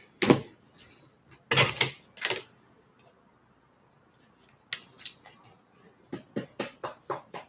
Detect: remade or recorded recorded